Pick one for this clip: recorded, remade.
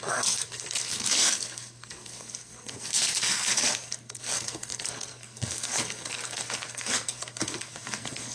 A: remade